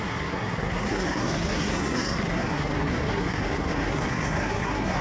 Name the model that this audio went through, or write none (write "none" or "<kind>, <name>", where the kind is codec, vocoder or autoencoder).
codec, SNAC